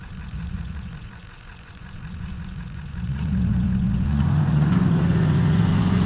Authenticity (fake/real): fake